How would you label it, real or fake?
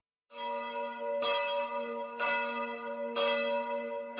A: fake